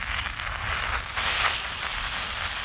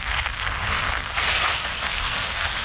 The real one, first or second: first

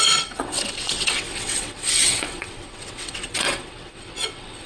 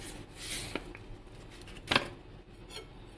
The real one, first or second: second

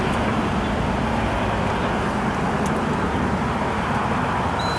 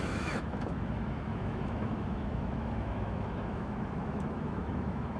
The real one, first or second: first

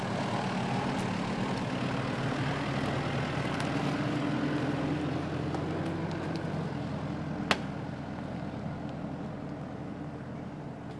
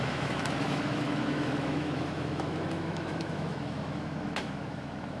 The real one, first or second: first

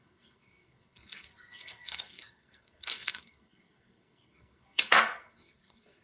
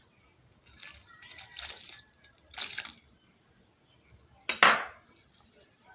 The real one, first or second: second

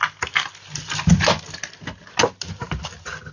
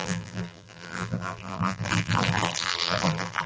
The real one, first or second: first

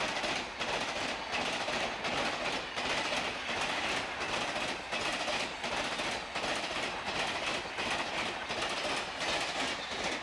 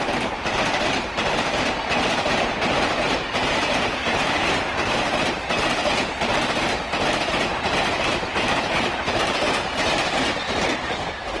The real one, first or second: first